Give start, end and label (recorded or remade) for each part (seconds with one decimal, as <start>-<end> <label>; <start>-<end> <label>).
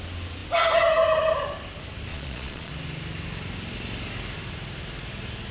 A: 0.0-2.1 recorded; 2.1-2.7 remade; 2.7-5.5 recorded